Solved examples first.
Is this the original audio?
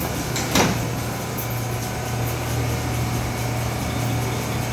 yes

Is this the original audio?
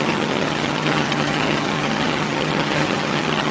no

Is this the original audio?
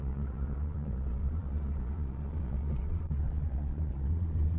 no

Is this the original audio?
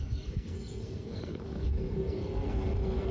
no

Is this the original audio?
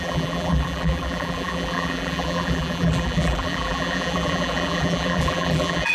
no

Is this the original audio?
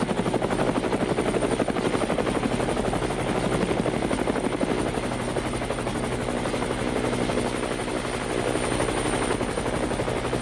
yes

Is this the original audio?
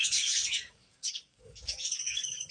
no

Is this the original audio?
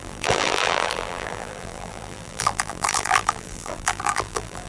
no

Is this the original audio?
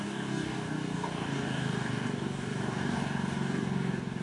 no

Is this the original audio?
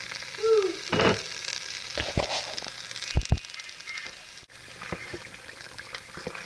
yes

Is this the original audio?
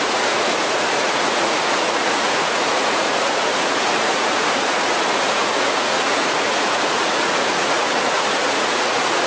no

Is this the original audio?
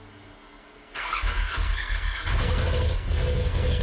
no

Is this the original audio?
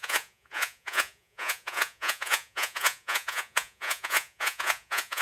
no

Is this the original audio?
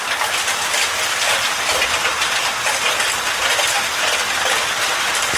yes